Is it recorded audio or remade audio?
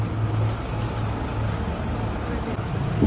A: recorded